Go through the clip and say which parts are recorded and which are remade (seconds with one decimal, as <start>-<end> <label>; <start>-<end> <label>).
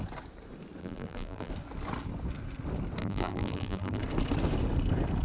0.0-0.8 recorded; 0.8-1.5 remade; 1.5-3.0 recorded; 3.0-4.0 remade; 4.0-5.2 recorded